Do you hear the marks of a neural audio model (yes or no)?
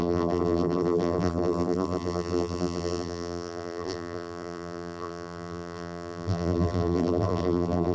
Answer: yes